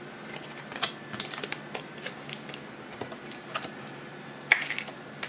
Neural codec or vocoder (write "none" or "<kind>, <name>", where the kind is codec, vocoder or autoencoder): vocoder, BigVGAN v2